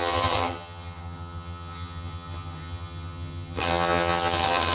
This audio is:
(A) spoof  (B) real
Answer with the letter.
A